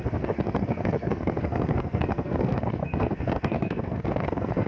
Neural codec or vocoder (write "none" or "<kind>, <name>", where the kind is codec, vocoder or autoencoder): codec, SNAC